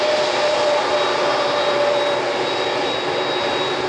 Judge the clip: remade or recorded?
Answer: recorded